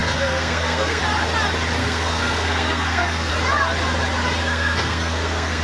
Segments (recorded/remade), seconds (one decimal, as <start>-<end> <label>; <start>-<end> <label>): 0.0-1.0 remade; 1.0-1.8 recorded; 1.8-3.3 remade; 3.3-4.4 recorded; 4.4-5.6 remade

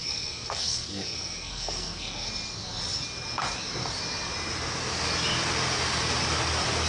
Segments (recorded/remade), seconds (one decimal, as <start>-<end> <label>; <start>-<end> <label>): 0.0-2.3 remade; 2.3-6.9 recorded

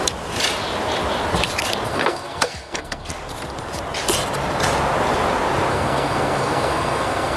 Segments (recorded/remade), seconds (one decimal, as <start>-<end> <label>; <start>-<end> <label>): 0.0-1.9 recorded; 1.9-3.1 remade; 3.1-5.7 recorded; 5.7-7.4 remade